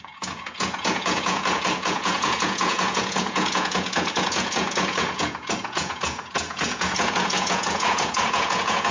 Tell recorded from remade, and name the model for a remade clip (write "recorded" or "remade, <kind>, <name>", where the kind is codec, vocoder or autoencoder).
remade, vocoder, Vocos